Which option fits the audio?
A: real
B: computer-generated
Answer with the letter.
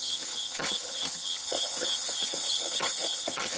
B